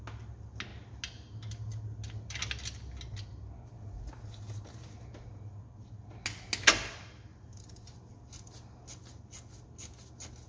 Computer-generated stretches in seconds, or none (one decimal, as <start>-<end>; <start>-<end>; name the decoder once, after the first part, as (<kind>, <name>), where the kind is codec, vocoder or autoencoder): 7.3-7.9 (vocoder, BigVGAN v2)